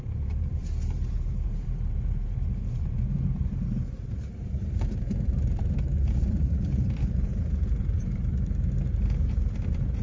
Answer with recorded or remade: remade